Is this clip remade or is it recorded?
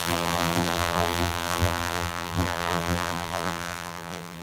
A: remade